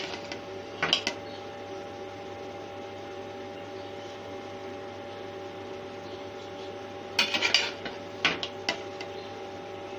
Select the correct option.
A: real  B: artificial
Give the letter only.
A